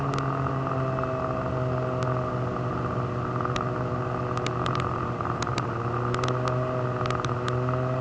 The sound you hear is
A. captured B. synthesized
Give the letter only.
A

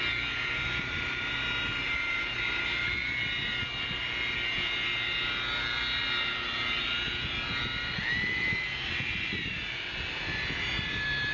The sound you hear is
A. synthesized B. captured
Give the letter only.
B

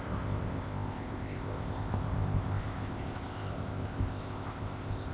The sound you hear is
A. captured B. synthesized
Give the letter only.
B